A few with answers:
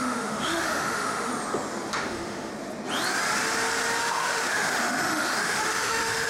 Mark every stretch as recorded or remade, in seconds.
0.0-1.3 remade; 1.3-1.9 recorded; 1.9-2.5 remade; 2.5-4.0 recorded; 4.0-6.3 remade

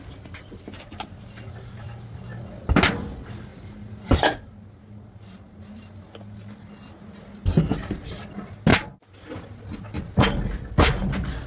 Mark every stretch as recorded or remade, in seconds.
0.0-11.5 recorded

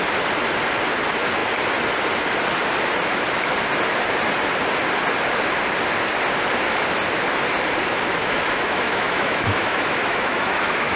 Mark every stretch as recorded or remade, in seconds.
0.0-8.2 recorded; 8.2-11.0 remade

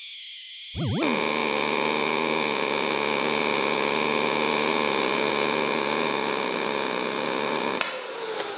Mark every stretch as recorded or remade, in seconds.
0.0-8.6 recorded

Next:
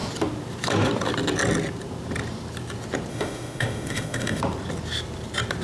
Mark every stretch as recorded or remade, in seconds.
0.0-3.1 recorded; 3.1-4.4 remade; 4.4-5.6 recorded

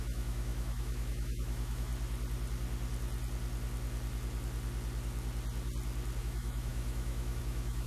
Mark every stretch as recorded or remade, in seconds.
0.0-1.9 remade; 1.9-6.2 recorded; 6.2-7.9 remade

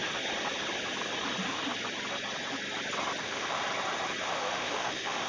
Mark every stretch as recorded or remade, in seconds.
0.0-3.2 recorded; 3.2-3.6 remade; 3.6-4.2 recorded; 4.2-5.3 remade

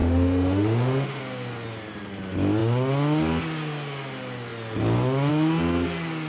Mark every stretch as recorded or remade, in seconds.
0.0-1.2 remade; 1.2-6.3 recorded